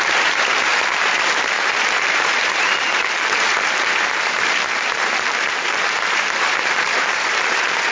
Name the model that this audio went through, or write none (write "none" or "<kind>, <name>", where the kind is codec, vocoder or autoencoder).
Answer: vocoder, BigVGAN v2